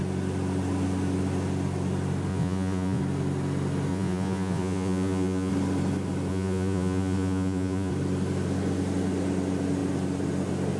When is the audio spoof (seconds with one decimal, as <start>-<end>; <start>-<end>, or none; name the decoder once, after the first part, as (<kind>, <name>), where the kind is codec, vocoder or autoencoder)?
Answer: 2.3-3.0 (vocoder, Vocos); 3.9-5.5; 6.3-7.9